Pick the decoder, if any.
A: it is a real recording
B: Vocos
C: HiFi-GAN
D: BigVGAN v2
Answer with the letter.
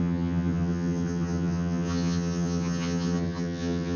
C